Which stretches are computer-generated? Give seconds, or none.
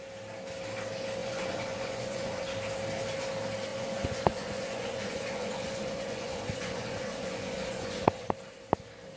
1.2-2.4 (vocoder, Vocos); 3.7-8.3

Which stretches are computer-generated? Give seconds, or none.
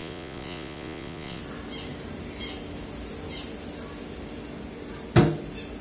0.0-1.4 (vocoder, Vocos)